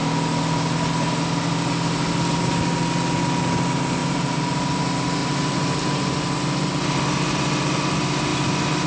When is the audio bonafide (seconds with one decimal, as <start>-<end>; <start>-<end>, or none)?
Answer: 0.0-4.0; 4.8-5.2; 6.1-8.9